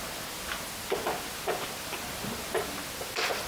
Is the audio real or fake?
real